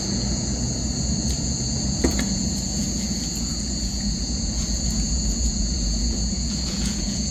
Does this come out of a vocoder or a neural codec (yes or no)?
yes